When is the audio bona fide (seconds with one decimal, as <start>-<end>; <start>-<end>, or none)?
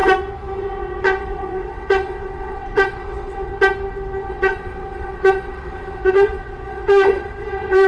0.0-1.0; 3.5-4.3